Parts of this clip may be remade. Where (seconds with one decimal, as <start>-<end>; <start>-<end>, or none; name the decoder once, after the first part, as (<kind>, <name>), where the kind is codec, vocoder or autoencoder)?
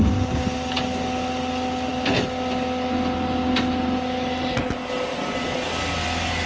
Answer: none